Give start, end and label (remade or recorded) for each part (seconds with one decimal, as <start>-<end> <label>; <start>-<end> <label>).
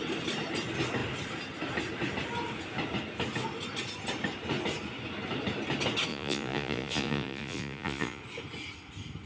0.0-6.1 recorded; 6.1-8.2 remade; 8.2-9.3 recorded